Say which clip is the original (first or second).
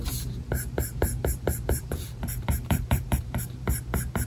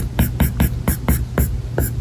second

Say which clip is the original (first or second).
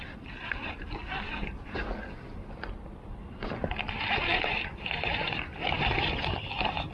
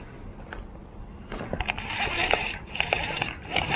second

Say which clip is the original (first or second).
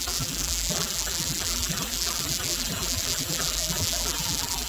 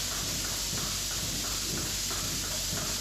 second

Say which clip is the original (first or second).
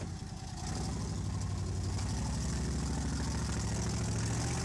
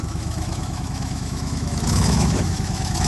first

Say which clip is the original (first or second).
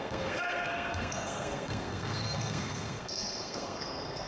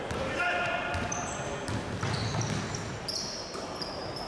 second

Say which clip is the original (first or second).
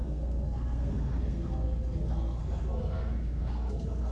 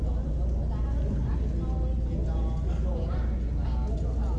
second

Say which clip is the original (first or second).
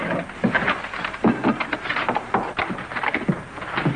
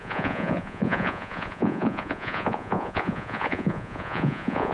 first